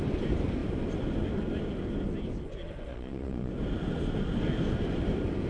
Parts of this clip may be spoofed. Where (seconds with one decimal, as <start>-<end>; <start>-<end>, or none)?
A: 2.9-3.5